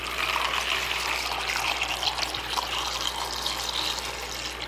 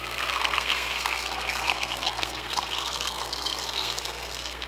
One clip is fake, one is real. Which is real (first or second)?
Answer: first